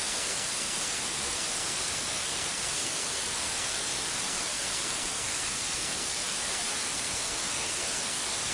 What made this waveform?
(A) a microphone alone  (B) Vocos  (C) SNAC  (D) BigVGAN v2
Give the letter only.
C